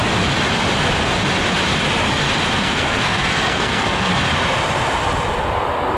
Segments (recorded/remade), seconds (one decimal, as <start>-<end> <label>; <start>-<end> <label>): 0.0-2.6 recorded; 2.6-4.1 remade; 4.1-6.0 recorded